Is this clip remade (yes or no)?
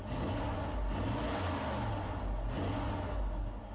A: no